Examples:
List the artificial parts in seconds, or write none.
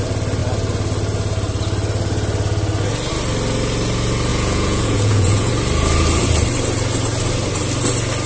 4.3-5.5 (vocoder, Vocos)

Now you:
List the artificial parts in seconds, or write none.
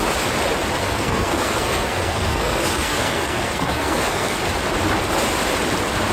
0.8-4.4 (codec, SNAC)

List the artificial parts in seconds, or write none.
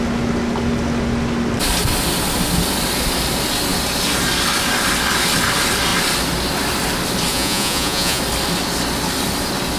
7.3-8.2 (vocoder, Vocos)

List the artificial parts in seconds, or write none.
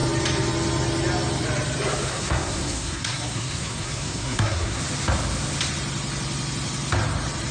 2.1-4.8 (codec, SNAC)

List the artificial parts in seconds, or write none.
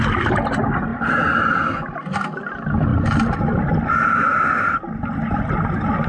none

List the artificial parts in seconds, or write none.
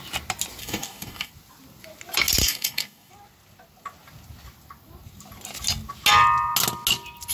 0.6-1.3 (codec, DAC); 2.4-3.1